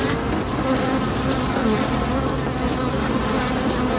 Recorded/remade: recorded